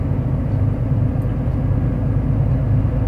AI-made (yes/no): no